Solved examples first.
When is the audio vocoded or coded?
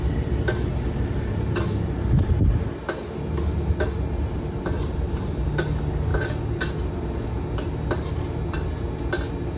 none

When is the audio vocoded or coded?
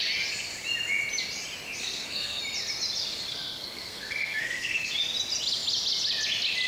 1.8-2.4 (codec, SNAC); 3.3-4.9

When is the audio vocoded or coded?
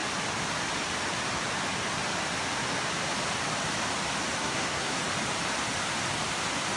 4.4-5.0 (codec, SNAC)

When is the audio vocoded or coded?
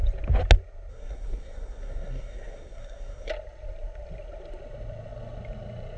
0.9-3.3 (codec, SNAC)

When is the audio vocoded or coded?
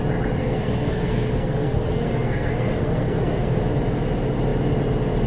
0.4-3.6 (codec, SNAC)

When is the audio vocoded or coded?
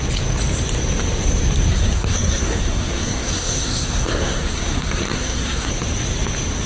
1.7-5.7 (codec, SNAC)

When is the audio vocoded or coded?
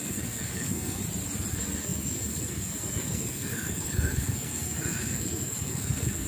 0.0-1.0 (codec, SNAC); 1.5-6.3